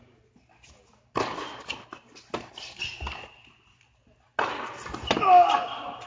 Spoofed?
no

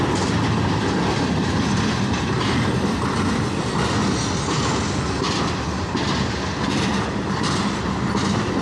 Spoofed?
no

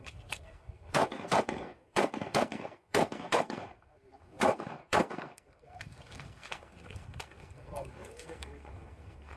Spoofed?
yes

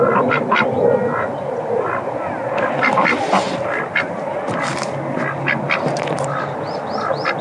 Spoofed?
no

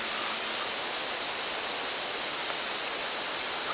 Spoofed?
no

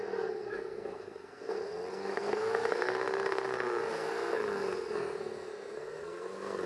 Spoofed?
yes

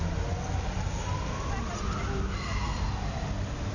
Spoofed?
no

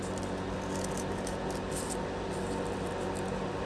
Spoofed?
no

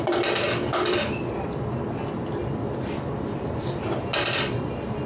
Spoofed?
no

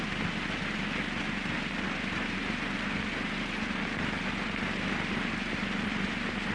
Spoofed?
no